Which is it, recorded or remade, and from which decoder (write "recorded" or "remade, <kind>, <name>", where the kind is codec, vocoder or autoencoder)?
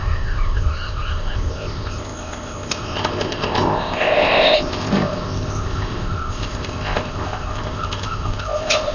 remade, codec, ZipCodec